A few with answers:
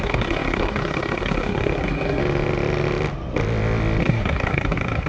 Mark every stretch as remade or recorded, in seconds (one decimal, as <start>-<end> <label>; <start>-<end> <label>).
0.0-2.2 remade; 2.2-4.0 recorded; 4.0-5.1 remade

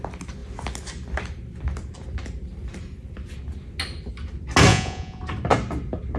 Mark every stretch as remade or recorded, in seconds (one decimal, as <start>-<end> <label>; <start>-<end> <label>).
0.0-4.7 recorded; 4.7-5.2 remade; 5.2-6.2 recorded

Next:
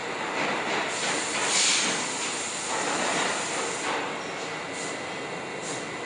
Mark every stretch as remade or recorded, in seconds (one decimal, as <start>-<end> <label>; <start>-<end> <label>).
0.0-6.1 recorded

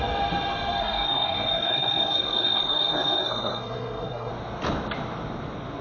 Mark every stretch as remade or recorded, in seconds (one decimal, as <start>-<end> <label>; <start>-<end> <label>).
0.0-0.8 recorded; 0.8-4.3 remade; 4.3-5.8 recorded

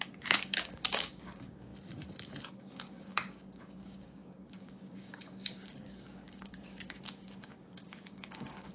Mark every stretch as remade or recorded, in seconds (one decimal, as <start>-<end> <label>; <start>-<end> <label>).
0.0-1.7 remade; 1.7-2.4 recorded; 2.4-8.7 remade

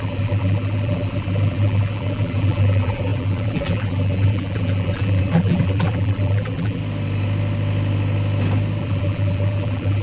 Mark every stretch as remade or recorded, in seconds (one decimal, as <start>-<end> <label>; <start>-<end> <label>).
0.0-6.8 remade; 6.8-8.8 recorded; 8.8-10.0 remade